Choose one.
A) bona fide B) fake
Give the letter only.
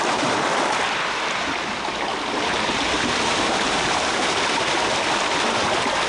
B